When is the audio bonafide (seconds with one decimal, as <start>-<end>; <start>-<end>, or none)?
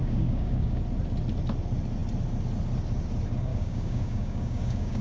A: 0.8-3.5